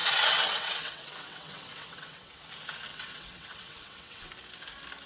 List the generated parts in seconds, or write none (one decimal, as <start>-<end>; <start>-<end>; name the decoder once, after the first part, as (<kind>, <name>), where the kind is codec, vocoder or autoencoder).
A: 0.0-2.4 (vocoder, WaveNeXt); 2.9-4.3